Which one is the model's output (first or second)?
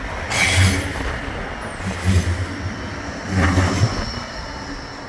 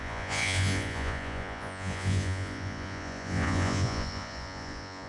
second